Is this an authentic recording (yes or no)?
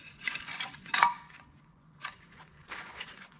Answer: no